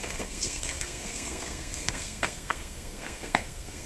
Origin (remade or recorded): remade